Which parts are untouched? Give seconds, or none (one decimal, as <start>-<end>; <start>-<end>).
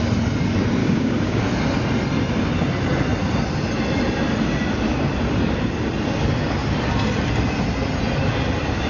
0.0-0.8; 1.4-8.9